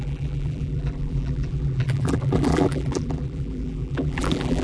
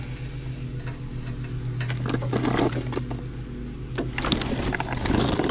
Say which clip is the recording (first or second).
second